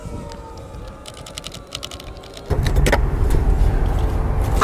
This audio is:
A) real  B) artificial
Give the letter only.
A